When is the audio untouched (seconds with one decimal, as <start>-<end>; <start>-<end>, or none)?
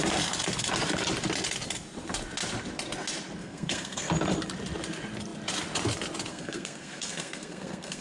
0.0-3.4; 4.1-6.3